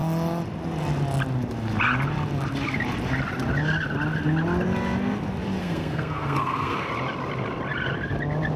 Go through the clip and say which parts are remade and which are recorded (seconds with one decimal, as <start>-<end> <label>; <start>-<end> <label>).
0.0-5.6 recorded; 5.6-6.9 remade; 6.9-8.6 recorded